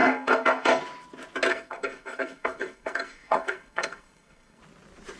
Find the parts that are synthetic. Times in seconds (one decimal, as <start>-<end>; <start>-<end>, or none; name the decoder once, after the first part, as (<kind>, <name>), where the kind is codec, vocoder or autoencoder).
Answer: 0.0-0.8 (codec, SNAC); 1.5-4.6